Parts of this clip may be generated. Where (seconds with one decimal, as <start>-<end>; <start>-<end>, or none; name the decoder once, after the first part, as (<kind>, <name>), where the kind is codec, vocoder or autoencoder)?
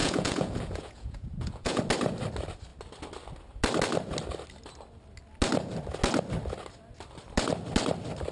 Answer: 0.0-1.8 (vocoder, Vocos)